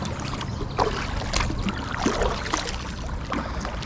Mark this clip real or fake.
real